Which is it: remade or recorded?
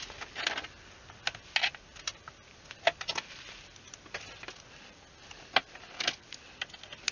recorded